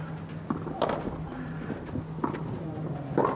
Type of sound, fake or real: real